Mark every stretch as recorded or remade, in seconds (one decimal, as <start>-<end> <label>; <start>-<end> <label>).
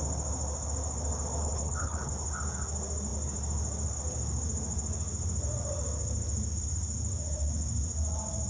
0.0-1.4 recorded; 1.4-2.1 remade; 2.1-8.5 recorded